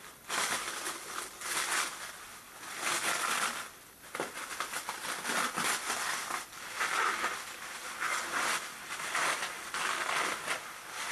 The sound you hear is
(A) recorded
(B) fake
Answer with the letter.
A